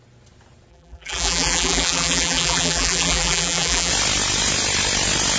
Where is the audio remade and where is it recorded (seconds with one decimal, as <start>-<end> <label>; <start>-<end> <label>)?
0.0-0.7 recorded; 0.7-3.9 remade; 3.9-5.4 recorded